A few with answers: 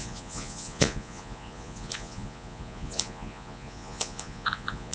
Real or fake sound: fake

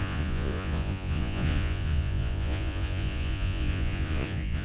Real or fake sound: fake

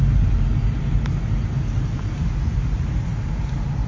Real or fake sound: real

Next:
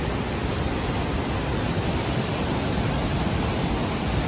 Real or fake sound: real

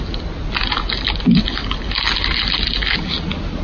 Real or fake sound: real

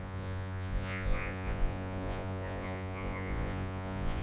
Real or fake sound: fake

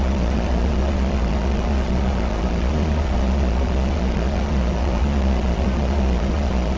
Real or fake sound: fake